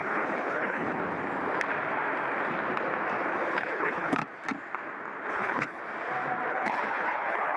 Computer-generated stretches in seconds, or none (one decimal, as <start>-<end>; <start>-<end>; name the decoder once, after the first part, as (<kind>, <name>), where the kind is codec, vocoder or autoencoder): 0.0-1.0 (codec, HILCodec); 3.5-4.2; 5.3-5.8; 6.5-7.6

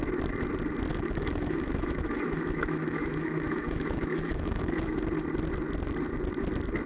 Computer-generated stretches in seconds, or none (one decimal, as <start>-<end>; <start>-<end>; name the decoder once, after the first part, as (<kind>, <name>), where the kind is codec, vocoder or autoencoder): 0.9-5.0 (autoencoder, DAC-VAE)